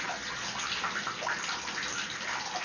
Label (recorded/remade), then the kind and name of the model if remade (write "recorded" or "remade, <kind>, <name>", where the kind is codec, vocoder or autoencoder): recorded